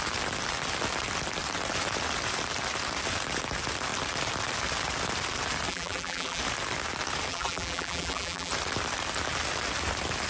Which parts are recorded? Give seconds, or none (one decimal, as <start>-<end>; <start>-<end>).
0.0-5.7; 6.4-7.3; 8.5-10.3